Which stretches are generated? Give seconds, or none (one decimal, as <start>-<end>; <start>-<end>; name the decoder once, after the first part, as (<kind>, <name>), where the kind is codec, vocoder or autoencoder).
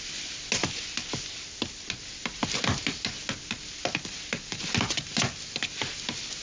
none